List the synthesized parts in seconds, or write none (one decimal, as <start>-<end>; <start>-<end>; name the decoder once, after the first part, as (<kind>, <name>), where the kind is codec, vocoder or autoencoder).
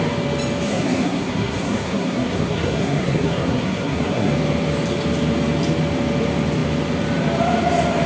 0.7-4.3 (codec, SNAC)